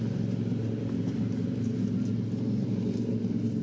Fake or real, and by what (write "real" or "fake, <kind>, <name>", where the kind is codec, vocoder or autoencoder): real